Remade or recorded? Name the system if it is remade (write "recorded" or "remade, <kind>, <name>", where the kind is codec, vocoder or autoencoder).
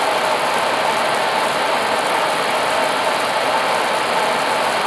recorded